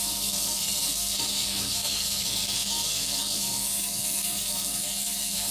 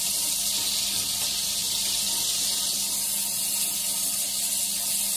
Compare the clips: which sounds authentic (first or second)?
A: second